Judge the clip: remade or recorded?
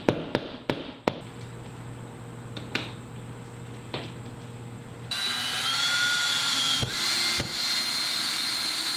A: recorded